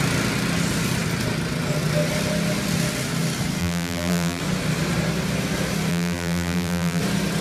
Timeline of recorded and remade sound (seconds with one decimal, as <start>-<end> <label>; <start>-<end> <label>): 0.0-3.6 recorded; 3.6-4.4 remade; 4.4-5.9 recorded; 5.9-7.0 remade; 7.0-7.4 recorded